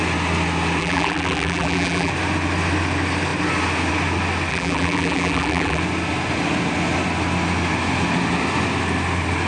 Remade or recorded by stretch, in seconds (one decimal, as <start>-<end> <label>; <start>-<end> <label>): 0.0-0.8 recorded; 0.8-2.1 remade; 2.1-4.5 recorded; 4.5-5.8 remade; 5.8-9.5 recorded